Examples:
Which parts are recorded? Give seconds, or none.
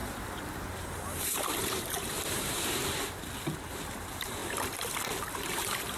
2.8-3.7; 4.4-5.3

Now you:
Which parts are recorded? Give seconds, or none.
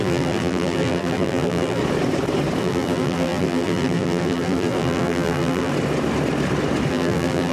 1.8-2.6; 5.7-6.9